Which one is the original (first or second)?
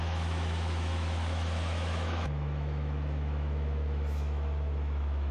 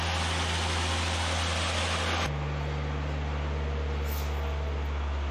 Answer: second